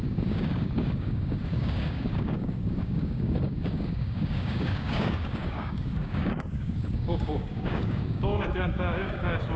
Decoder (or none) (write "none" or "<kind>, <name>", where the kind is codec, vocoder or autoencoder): codec, DAC